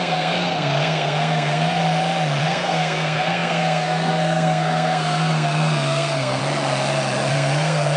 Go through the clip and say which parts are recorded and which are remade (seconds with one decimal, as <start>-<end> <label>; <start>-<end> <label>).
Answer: 0.0-1.8 remade; 1.8-2.4 recorded; 2.4-6.4 remade; 6.4-7.3 recorded; 7.3-8.0 remade